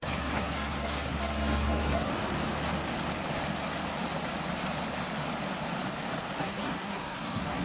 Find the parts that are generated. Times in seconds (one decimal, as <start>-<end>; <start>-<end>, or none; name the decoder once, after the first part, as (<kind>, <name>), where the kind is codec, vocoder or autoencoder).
0.0-2.1 (codec, SNAC); 6.4-7.6